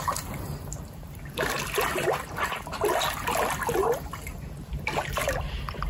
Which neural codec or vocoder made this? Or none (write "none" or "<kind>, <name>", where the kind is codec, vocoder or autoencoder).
none